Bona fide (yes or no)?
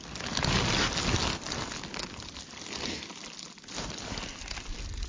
yes